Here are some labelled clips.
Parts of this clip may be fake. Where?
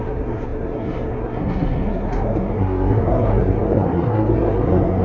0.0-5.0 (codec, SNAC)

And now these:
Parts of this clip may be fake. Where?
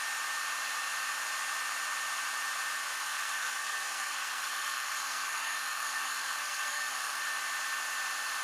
2.8-7.2 (codec, SNAC)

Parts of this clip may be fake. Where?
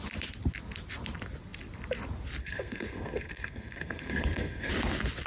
2.4-4.7 (codec, SNAC)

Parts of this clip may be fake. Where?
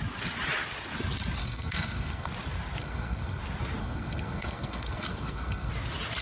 1.4-2.3 (codec, SNAC); 2.8-3.4; 3.8-5.7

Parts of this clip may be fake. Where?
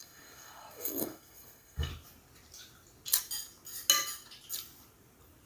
0.0-1.9 (codec, SNAC)